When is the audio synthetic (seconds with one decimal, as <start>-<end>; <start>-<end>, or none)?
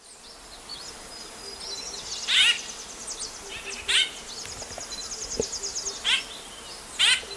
none